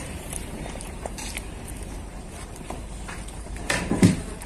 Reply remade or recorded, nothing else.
remade